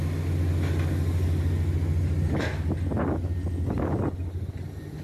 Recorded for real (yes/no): yes